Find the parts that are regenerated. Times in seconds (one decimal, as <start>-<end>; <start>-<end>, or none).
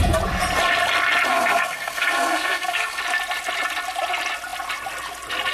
1.3-3.0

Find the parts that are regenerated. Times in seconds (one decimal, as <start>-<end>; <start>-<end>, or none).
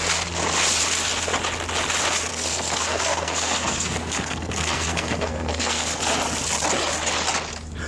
2.3-6.0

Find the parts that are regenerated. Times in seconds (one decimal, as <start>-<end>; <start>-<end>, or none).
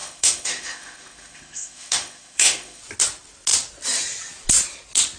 0.0-2.8